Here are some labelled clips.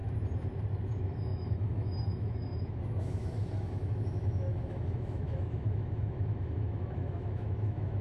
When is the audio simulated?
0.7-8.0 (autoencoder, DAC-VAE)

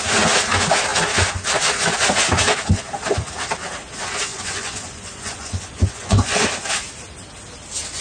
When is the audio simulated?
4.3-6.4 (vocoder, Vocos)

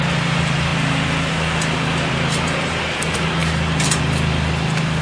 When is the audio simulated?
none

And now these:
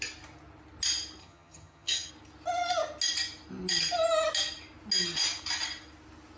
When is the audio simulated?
1.2-2.1 (vocoder, HiFi-GAN)